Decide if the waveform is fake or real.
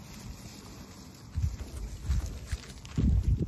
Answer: real